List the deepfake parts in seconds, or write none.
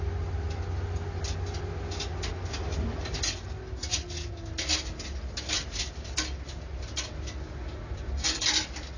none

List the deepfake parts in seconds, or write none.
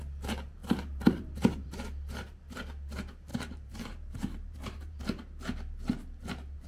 0.6-1.8; 3.3-5.0